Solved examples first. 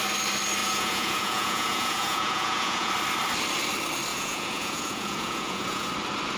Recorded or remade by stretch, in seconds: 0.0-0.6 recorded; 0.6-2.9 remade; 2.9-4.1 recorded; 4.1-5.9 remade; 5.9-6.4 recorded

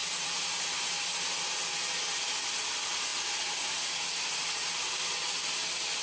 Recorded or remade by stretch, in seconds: 0.0-0.6 remade; 0.6-6.0 recorded